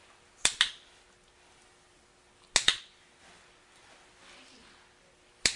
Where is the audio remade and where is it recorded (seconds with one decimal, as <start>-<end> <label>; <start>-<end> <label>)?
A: 0.0-5.6 recorded

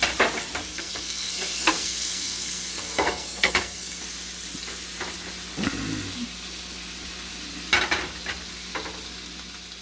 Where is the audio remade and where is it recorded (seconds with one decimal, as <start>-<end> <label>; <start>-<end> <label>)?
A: 0.0-0.7 recorded; 0.7-4.0 remade; 4.0-9.8 recorded

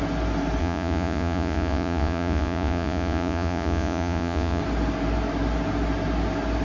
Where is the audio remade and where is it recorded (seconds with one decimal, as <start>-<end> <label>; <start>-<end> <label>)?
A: 0.0-0.6 recorded; 0.6-4.6 remade; 4.6-6.6 recorded

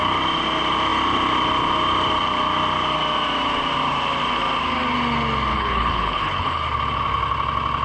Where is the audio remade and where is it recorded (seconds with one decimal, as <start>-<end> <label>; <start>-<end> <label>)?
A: 0.0-5.5 recorded; 5.5-6.6 remade; 6.6-7.8 recorded

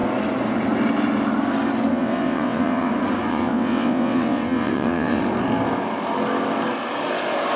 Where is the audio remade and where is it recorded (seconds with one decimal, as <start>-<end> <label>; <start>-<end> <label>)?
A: 0.0-1.9 recorded; 1.9-2.9 remade; 2.9-3.3 recorded; 3.3-5.2 remade; 5.2-7.6 recorded

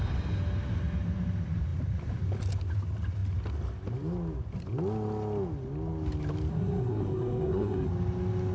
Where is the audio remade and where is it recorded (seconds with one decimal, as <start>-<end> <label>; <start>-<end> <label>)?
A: 0.0-6.5 recorded; 6.5-7.9 remade; 7.9-8.5 recorded

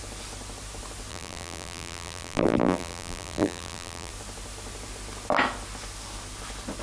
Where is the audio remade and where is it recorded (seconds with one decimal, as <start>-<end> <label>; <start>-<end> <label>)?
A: 0.0-1.1 recorded; 1.1-4.1 remade; 4.1-6.8 recorded

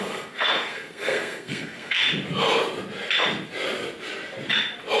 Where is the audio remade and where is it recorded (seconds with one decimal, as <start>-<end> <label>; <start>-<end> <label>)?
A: 0.0-2.0 remade; 2.0-5.0 recorded